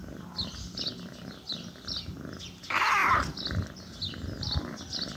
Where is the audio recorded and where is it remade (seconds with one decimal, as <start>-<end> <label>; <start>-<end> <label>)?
0.0-5.2 recorded